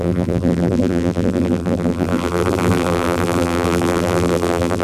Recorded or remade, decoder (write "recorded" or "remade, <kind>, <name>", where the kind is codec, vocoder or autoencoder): remade, vocoder, BigVGAN v2